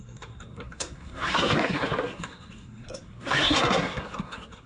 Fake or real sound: fake